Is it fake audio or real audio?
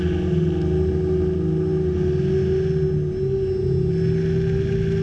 real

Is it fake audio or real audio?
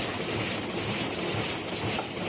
real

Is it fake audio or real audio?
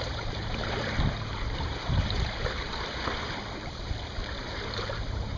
fake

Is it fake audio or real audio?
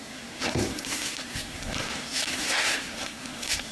fake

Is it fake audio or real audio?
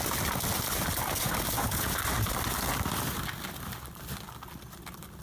real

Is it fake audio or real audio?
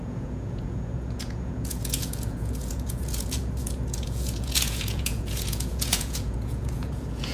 fake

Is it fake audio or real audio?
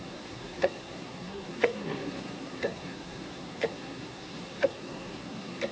fake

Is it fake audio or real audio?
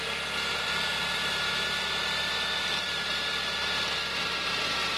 fake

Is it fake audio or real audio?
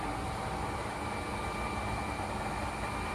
real